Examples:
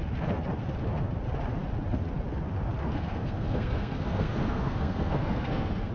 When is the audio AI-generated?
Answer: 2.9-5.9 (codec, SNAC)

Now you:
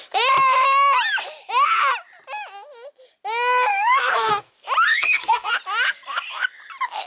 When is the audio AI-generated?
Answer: 3.7-4.5 (codec, SNAC); 4.9-5.5

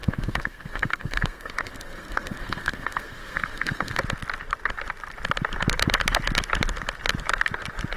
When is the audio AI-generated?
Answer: 0.0-4.0 (codec, SNAC)

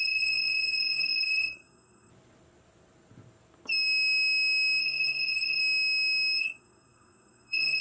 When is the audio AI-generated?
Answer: 0.0-2.1 (codec, SNAC); 4.8-5.6; 6.4-7.8

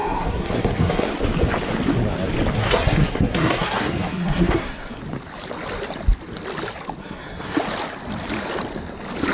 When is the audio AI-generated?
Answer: 0.0-1.1 (codec, SNAC); 2.5-5.0; 7.0-7.6